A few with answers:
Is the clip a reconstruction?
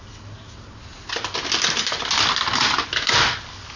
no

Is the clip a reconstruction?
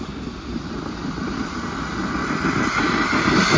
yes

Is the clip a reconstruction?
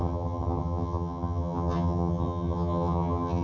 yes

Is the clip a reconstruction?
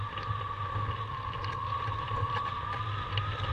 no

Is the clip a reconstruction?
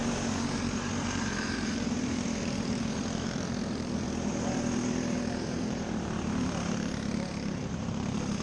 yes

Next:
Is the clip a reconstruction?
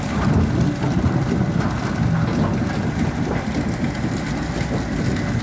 no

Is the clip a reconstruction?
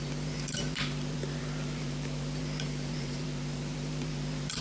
yes